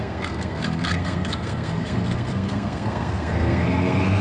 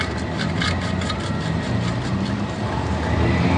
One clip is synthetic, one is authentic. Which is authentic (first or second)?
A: second